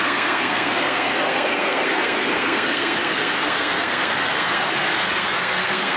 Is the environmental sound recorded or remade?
remade